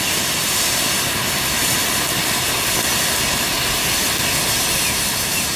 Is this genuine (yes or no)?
yes